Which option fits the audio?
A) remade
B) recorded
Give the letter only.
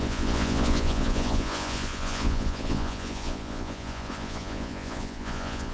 A